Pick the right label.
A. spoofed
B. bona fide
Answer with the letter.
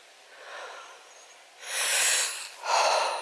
B